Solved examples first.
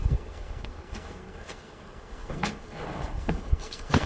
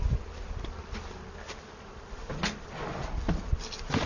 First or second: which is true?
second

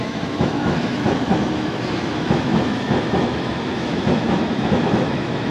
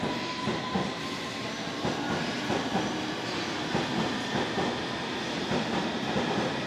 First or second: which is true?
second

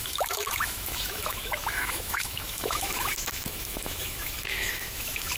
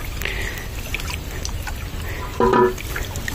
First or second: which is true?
second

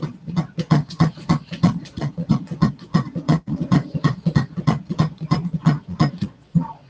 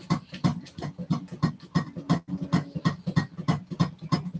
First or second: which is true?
second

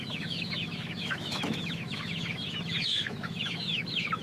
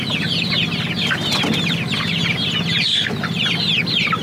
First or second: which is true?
second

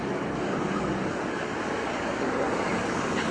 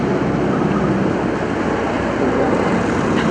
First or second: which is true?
second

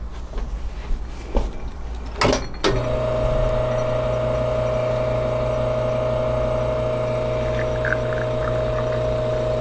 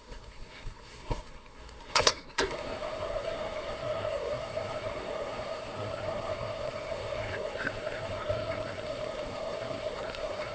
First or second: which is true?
first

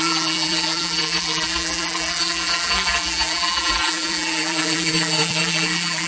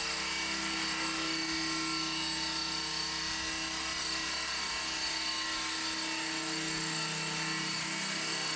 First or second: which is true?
second